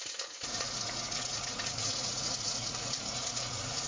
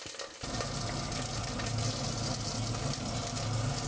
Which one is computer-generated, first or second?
first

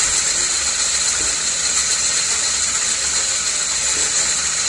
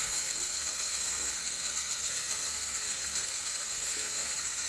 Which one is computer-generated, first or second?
second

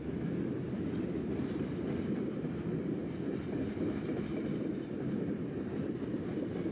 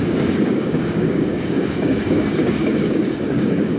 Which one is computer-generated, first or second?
second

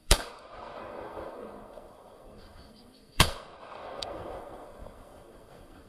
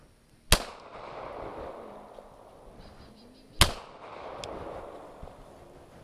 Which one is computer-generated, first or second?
first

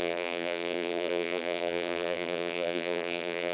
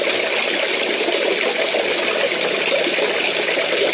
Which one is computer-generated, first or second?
first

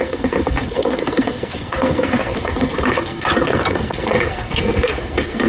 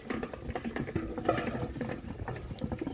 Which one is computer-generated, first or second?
first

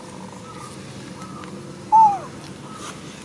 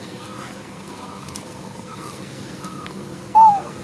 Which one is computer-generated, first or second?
second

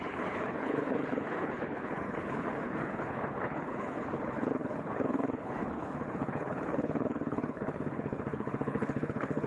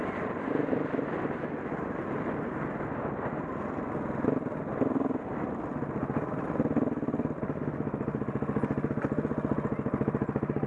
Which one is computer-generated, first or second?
first